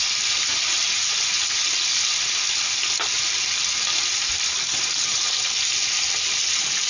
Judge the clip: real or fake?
real